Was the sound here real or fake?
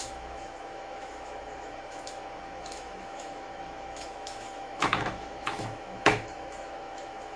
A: fake